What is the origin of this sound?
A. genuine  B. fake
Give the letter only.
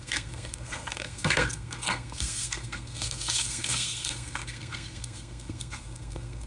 B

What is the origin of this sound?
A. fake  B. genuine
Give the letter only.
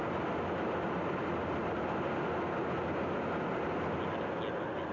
B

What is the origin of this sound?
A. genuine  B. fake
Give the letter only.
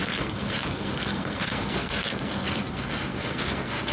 B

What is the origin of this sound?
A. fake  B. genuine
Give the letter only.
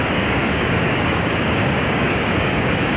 A